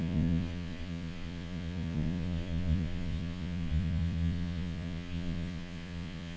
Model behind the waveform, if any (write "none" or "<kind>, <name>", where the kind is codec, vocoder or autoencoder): vocoder, Vocos